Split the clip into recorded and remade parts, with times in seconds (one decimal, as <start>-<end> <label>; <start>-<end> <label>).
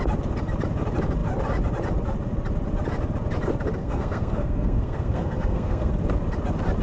0.0-3.8 recorded; 3.8-5.9 remade; 5.9-6.8 recorded